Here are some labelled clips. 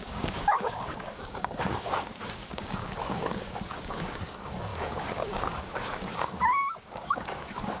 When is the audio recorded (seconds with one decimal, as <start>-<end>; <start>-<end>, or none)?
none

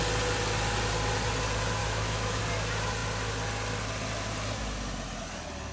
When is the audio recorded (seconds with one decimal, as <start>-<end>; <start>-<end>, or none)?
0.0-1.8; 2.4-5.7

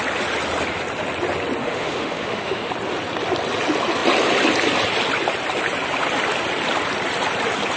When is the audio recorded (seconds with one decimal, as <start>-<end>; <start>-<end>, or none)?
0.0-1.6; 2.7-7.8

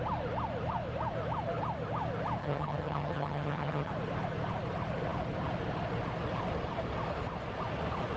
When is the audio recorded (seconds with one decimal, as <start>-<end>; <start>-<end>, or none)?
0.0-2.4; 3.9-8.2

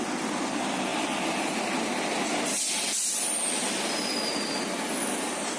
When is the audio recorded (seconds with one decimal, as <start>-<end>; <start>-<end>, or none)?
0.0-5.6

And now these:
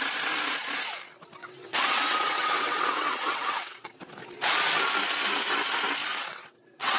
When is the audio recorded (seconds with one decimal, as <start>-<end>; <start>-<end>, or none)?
0.0-1.4; 3.9-6.1